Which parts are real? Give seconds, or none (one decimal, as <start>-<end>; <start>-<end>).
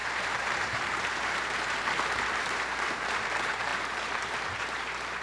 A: none